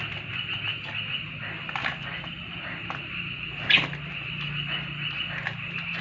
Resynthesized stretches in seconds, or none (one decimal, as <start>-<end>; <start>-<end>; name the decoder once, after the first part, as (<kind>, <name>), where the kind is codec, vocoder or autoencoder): none